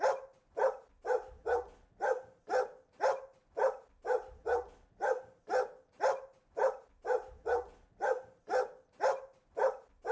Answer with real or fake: real